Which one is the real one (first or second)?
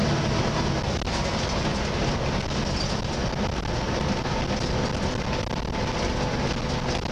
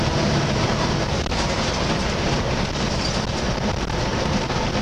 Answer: first